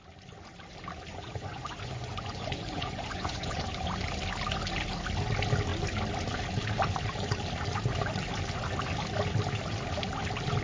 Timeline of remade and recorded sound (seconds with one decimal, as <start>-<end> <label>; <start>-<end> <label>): 0.0-1.1 recorded; 1.1-3.6 remade; 3.6-10.6 recorded